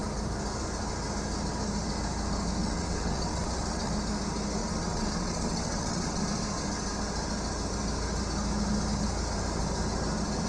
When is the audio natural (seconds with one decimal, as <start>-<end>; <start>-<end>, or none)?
0.0-2.6; 3.9-4.6; 6.2-10.5